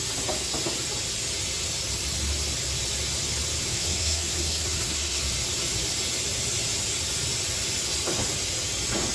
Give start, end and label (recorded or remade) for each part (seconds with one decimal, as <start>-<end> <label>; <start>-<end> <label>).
0.0-3.7 recorded; 3.7-5.2 remade; 5.2-9.1 recorded